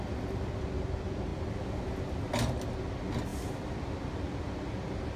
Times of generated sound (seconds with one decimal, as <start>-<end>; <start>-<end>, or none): none